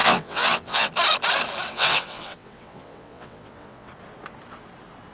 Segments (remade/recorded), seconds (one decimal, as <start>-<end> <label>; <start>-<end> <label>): 0.0-0.9 remade; 0.9-1.7 recorded; 1.7-3.9 remade; 3.9-5.1 recorded